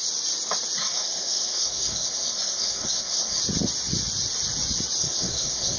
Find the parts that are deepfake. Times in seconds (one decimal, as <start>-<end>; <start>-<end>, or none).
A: 0.8-3.4; 5.0-5.8